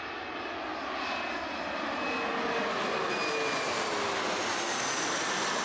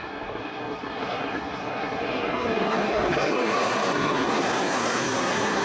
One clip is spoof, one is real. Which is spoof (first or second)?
second